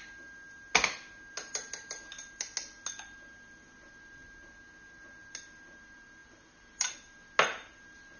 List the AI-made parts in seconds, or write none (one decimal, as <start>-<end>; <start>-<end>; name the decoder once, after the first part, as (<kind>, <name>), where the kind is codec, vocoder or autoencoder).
none